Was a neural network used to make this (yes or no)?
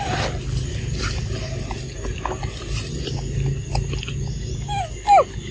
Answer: no